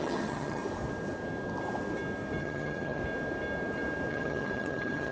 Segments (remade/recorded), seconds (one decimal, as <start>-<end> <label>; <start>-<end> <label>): 0.0-0.6 remade; 0.6-2.4 recorded; 2.4-3.0 remade; 3.0-4.1 recorded; 4.1-5.1 remade